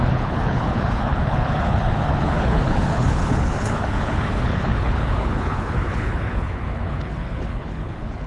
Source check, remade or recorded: remade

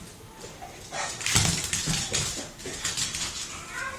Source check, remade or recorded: recorded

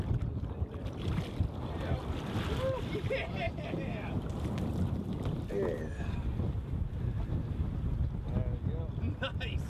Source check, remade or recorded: recorded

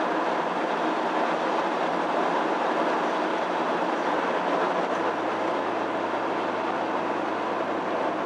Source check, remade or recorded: recorded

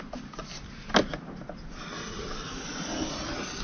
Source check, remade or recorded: recorded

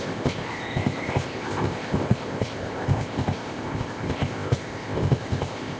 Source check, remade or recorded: remade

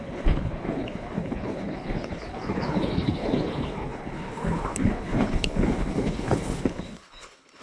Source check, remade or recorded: remade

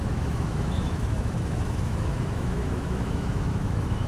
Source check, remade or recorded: remade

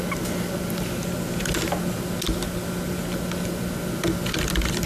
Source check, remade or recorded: recorded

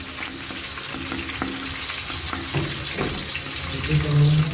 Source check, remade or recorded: recorded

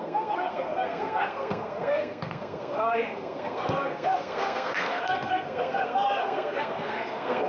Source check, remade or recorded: remade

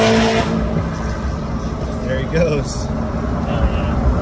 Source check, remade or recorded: recorded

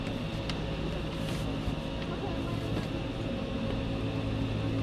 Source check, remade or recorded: recorded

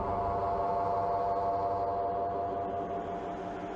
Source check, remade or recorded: recorded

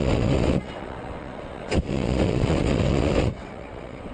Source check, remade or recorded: remade